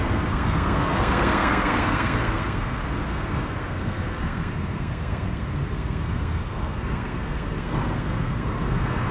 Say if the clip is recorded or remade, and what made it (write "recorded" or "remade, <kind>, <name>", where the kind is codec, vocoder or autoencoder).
remade, codec, SNAC